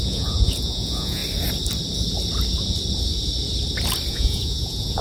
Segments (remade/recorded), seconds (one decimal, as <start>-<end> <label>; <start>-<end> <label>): 0.0-1.2 remade; 1.2-4.1 recorded; 4.1-5.0 remade